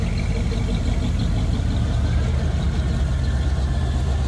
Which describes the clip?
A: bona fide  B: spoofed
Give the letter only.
A